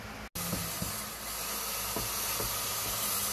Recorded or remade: recorded